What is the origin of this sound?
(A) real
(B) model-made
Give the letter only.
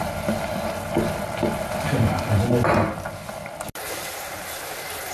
A